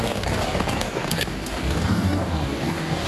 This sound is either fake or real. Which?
fake